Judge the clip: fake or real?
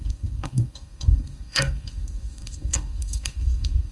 fake